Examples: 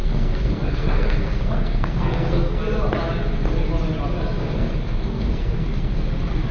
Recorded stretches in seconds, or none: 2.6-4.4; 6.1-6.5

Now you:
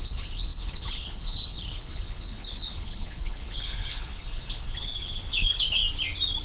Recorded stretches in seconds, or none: 5.8-6.4

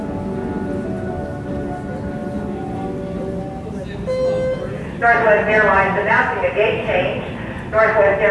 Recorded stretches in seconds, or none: 0.0-8.3

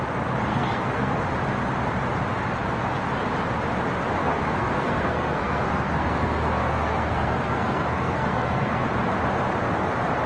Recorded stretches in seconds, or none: 0.0-0.5; 1.1-4.2; 8.8-10.3

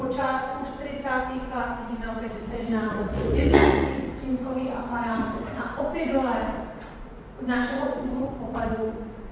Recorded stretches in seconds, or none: 0.5-1.2

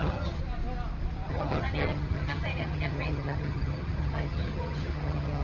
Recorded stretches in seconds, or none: 0.4-1.3